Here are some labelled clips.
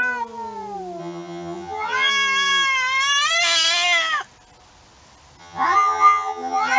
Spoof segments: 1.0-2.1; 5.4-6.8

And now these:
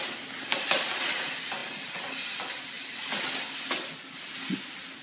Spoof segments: none

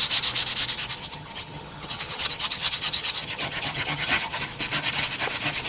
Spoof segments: 1.0-4.4

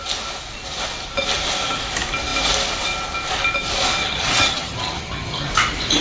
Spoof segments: 4.0-5.5

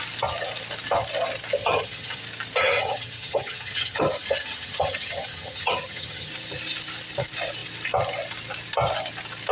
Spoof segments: 1.6-2.2; 2.6-6.3